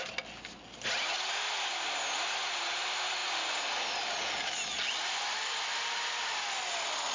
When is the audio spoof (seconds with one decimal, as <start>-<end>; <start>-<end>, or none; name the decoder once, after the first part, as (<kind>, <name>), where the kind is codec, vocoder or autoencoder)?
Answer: none